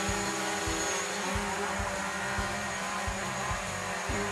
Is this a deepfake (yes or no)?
no